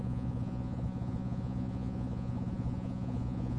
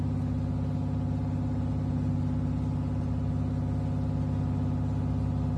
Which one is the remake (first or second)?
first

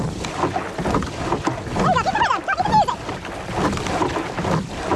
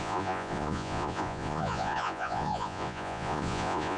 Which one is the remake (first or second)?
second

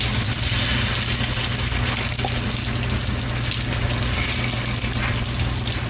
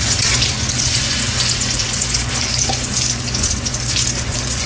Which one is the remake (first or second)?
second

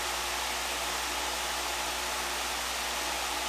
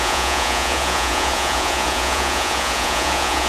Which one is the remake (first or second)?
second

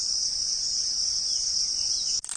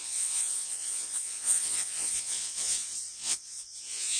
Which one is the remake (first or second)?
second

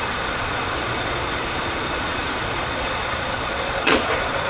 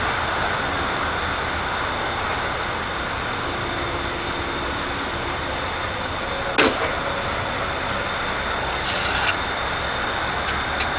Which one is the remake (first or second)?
first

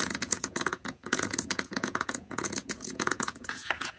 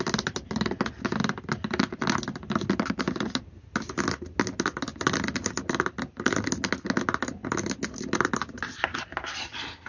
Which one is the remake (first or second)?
first